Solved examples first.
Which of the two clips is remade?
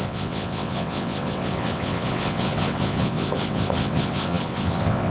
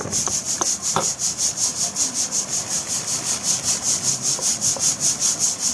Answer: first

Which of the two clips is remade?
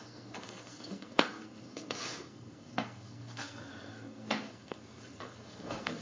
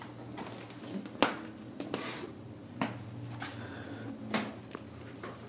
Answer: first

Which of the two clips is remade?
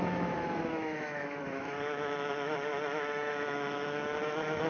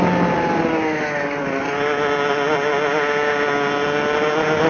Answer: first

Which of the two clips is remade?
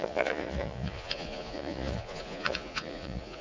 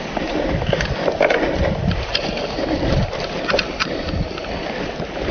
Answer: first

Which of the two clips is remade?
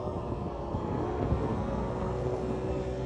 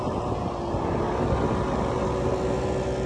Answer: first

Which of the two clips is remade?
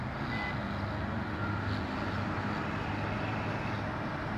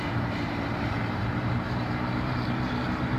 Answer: second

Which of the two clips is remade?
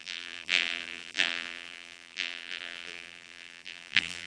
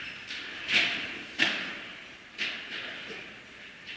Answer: first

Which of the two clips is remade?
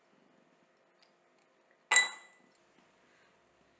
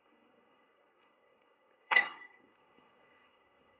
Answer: second